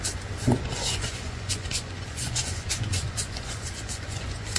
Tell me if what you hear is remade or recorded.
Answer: remade